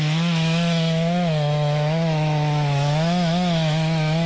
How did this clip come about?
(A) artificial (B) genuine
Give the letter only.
A